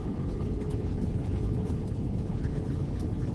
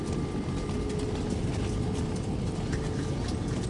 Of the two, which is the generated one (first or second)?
first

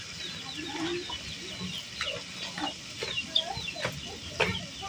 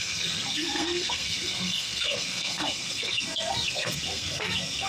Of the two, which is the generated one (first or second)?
second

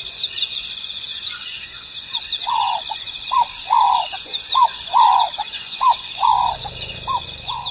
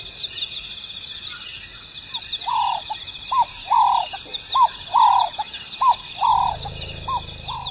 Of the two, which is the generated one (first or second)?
first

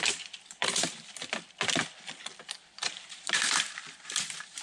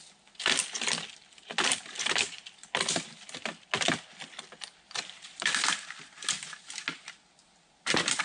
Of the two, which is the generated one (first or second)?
first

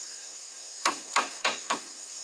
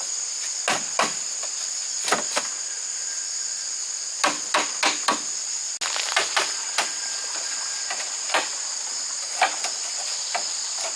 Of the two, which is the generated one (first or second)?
first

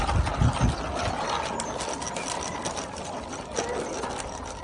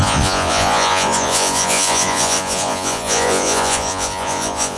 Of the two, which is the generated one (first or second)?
second